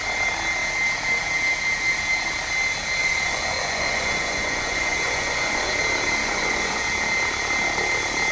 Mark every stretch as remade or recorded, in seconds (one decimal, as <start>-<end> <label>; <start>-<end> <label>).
0.0-3.0 recorded; 3.0-5.7 remade; 5.7-6.2 recorded; 6.2-6.9 remade; 6.9-8.3 recorded